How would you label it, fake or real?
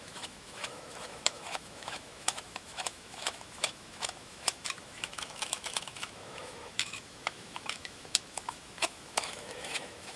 fake